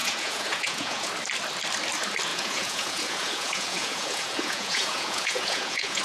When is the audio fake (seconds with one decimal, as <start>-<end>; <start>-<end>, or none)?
0.0-1.1; 2.3-6.0